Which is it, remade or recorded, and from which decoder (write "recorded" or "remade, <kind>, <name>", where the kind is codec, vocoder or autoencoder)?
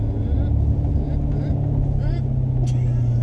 recorded